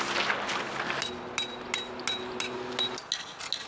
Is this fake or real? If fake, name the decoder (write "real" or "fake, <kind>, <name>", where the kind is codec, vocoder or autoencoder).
real